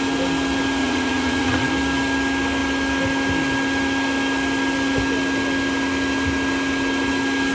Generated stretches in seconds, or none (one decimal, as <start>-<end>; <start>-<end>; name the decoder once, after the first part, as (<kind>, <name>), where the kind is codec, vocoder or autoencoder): 0.8-1.7 (vocoder, Vocos)